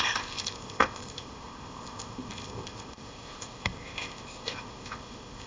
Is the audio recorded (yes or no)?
no